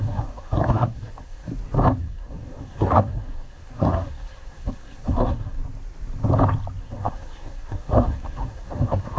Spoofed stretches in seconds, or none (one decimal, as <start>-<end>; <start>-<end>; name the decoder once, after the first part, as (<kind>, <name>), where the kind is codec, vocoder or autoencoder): 0.0-1.5 (codec, SNAC); 2.0-5.6; 6.8-9.2